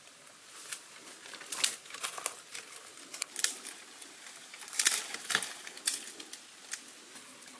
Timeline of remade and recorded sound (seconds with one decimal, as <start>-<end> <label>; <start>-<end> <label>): 0.0-3.1 recorded; 3.1-5.6 remade; 5.6-7.6 recorded

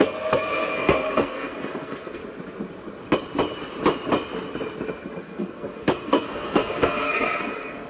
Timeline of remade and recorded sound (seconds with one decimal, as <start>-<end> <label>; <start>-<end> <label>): 0.0-2.2 remade; 2.2-5.2 recorded; 5.2-7.9 remade